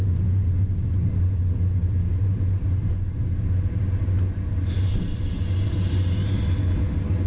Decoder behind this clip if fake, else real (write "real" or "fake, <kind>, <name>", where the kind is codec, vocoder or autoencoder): real